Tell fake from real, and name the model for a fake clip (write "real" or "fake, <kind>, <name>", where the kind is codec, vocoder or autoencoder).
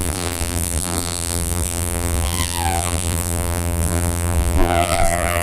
fake, vocoder, BigVGAN v2